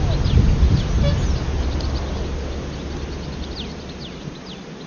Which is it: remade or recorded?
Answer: recorded